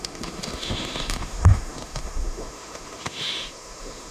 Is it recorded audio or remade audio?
remade